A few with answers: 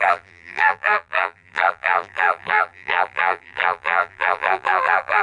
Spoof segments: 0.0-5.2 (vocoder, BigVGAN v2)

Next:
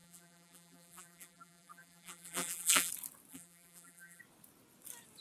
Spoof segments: 0.0-2.9 (vocoder, BigVGAN v2); 3.3-4.2

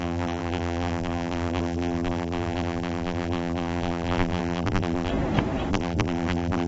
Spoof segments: 0.0-5.1 (vocoder, BigVGAN v2); 5.7-6.7

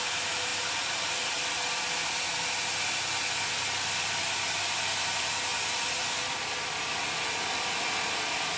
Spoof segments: none

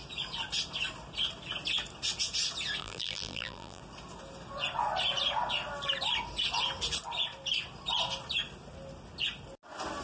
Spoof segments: 2.8-3.8 (vocoder, BigVGAN v2)